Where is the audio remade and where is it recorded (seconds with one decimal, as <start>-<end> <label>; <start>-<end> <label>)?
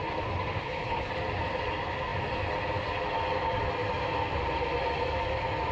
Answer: 0.0-0.6 recorded; 0.6-1.1 remade; 1.1-5.7 recorded